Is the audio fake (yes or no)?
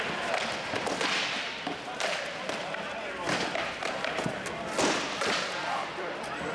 no